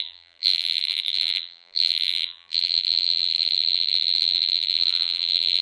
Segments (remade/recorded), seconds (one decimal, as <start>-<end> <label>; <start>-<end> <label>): 0.0-5.6 remade